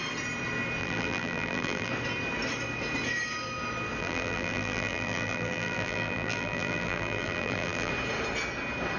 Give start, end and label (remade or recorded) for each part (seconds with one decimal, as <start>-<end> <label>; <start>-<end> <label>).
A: 0.0-0.8 recorded; 0.8-1.9 remade; 1.9-4.0 recorded; 4.0-7.9 remade; 7.9-9.0 recorded